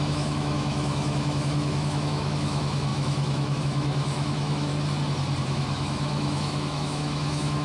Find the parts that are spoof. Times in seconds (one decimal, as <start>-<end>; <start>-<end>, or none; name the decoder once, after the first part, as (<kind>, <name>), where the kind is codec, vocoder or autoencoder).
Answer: 0.0-4.7 (autoencoder, DAC-VAE); 5.4-7.6

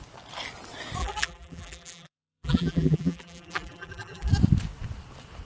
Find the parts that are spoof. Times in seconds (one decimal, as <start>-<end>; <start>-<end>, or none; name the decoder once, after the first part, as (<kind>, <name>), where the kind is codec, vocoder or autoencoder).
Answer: 1.0-4.3 (vocoder, BigVGAN v2)

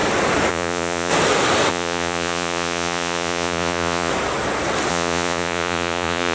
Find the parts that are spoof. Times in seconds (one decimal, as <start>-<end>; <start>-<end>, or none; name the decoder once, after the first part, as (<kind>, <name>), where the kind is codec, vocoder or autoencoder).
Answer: 0.5-1.1 (vocoder, Vocos); 1.7-4.1; 4.9-6.3

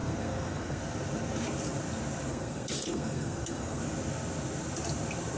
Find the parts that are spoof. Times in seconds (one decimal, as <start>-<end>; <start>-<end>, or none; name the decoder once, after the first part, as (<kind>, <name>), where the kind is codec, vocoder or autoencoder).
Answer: 0.0-0.8 (codec, SNAC); 2.3-3.8